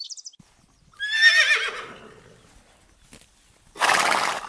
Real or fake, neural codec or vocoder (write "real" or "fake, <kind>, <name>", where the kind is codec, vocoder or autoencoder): real